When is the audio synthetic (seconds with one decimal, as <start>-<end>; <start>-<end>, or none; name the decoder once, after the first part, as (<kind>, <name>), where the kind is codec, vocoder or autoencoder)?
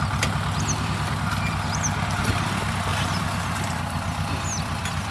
2.9-3.8 (vocoder, BigVGAN v2)